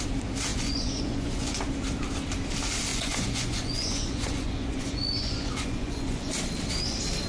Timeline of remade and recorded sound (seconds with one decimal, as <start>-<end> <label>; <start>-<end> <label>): 0.0-0.5 recorded; 0.5-1.6 remade; 1.6-2.9 recorded; 2.9-6.3 remade; 6.3-7.3 recorded

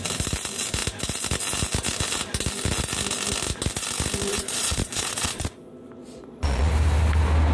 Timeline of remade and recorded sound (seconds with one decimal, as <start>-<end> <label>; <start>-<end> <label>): 0.0-4.3 recorded; 4.3-5.5 remade; 5.5-6.0 recorded; 6.0-6.7 remade; 6.7-7.5 recorded

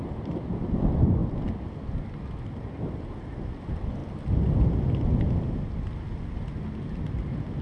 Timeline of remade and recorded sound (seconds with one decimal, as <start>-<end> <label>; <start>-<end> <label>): 0.0-7.6 recorded